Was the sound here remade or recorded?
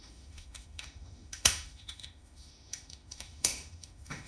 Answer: remade